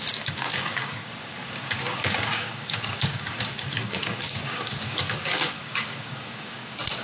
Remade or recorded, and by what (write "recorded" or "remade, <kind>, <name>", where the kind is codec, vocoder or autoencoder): remade, codec, DAC